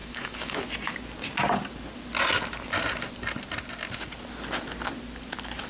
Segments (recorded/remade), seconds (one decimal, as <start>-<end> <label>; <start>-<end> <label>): 0.0-0.6 remade; 0.6-5.7 recorded